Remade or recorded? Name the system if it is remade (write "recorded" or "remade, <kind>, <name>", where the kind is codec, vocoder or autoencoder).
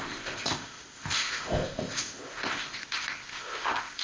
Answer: remade, codec, ZipCodec